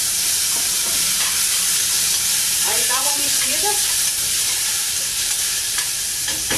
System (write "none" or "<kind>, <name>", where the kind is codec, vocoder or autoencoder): vocoder, BigVGAN v2